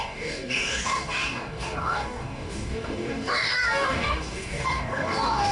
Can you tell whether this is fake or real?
fake